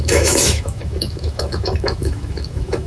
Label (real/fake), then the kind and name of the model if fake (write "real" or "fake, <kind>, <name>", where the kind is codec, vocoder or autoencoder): fake, autoencoder, DAC-VAE